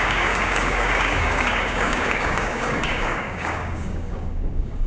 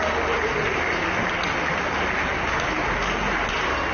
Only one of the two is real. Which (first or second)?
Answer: second